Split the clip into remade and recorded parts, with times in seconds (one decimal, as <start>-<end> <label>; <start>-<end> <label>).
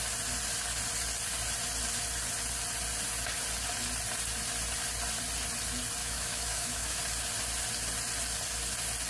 0.0-6.0 recorded; 6.0-7.0 remade; 7.0-9.1 recorded